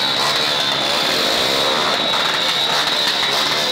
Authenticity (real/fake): real